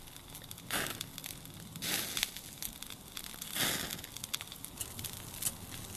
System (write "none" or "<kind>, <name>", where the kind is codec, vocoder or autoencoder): none